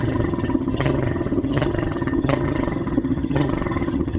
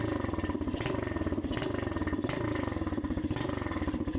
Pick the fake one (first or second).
first